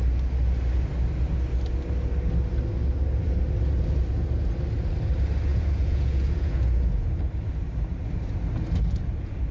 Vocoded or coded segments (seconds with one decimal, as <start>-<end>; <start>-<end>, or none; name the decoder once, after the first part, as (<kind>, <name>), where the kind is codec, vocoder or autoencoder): 5.5-7.2 (vocoder, Vocos)